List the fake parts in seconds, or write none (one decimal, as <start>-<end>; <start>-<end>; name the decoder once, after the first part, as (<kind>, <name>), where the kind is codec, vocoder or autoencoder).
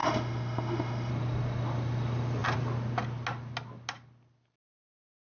0.0-1.1 (autoencoder, DAC-VAE)